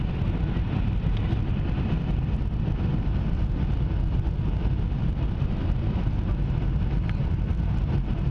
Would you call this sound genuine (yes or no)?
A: yes